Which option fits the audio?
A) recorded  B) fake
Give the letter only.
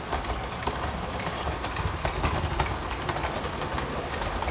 A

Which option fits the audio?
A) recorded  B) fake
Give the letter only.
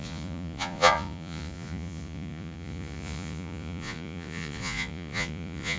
B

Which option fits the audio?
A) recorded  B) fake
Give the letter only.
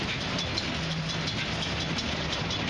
A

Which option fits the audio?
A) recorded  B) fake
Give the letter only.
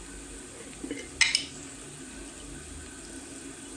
A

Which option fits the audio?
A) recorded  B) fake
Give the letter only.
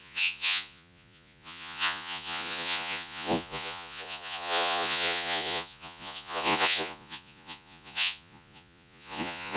B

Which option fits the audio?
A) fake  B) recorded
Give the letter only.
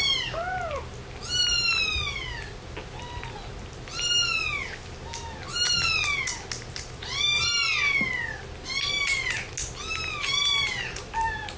B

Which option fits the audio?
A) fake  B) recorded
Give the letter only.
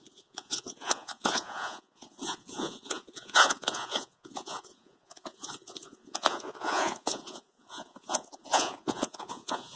A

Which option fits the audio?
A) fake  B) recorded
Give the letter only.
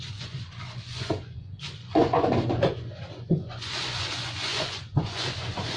A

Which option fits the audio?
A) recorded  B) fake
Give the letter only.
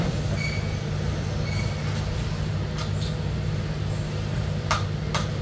A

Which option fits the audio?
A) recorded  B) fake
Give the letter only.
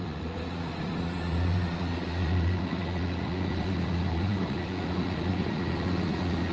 B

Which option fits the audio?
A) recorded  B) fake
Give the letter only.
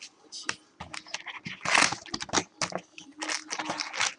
A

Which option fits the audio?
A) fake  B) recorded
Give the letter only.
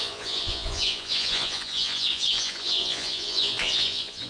A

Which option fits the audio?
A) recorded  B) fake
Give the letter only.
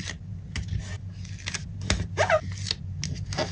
A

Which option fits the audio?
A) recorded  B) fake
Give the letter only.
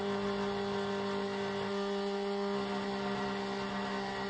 A